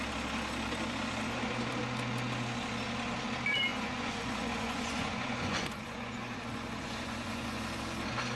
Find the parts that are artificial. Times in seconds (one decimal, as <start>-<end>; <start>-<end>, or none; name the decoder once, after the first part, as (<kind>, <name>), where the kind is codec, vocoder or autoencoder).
3.7-7.6 (vocoder, Vocos)